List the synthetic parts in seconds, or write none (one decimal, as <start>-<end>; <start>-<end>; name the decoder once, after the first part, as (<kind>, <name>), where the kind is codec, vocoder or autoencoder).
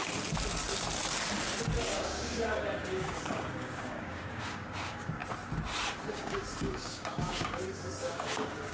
1.8-5.2 (codec, DAC); 5.9-8.7